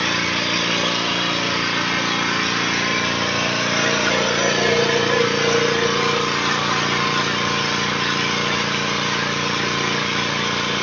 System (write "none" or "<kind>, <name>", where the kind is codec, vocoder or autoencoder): none